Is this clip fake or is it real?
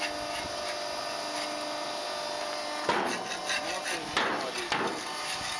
real